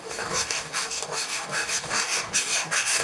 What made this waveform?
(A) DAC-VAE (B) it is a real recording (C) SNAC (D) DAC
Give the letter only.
D